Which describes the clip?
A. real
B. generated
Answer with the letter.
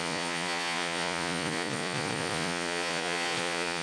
B